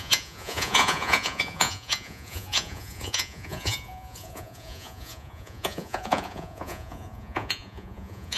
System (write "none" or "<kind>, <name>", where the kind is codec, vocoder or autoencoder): vocoder, Vocos